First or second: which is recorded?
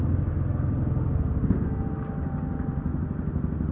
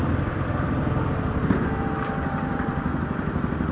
first